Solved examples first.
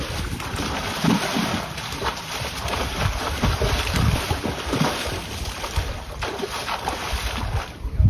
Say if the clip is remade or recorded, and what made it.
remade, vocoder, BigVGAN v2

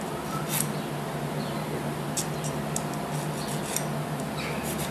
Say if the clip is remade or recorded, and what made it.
recorded